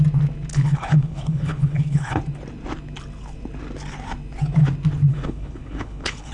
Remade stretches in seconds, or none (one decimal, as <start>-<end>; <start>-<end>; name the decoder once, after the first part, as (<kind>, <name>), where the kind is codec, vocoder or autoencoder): 0.5-2.2 (codec, HILCodec); 5.1-6.3